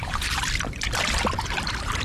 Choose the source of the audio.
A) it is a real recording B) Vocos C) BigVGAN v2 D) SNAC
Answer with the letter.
A